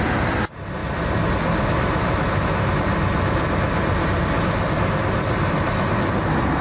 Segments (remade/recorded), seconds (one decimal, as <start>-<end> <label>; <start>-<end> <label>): 0.0-6.6 recorded